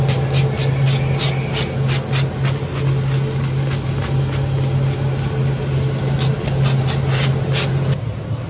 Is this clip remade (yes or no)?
no